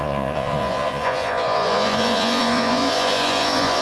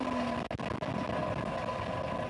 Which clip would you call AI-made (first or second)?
first